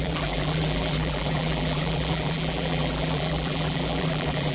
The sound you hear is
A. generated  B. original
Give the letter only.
A